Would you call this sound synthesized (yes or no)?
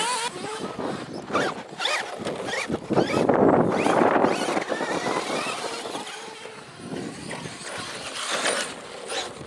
no